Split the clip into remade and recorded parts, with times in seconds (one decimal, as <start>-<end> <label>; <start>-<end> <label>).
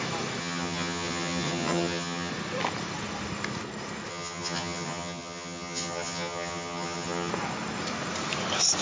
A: 0.0-0.4 recorded; 0.4-2.3 remade; 2.3-4.1 recorded; 4.1-7.3 remade; 7.3-8.8 recorded